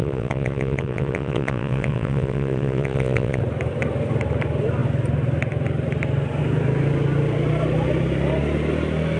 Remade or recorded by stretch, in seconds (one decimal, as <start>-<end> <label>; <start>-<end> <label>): 0.0-3.4 remade; 3.4-9.2 recorded